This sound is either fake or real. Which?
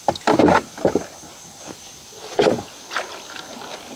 real